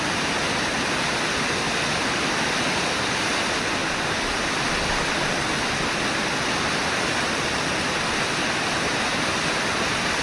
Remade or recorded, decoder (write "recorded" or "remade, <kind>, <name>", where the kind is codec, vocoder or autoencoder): recorded